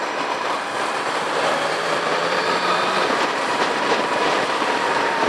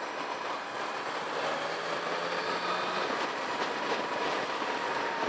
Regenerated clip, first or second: first